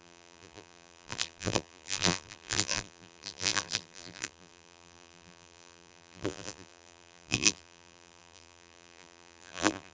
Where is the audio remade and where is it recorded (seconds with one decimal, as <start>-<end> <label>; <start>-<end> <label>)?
0.0-9.9 remade